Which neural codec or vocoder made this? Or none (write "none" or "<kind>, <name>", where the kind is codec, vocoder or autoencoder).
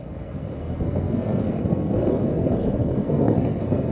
codec, SNAC